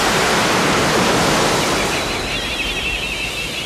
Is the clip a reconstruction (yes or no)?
no